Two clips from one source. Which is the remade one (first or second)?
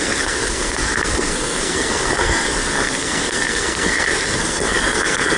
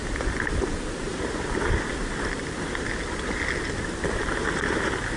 first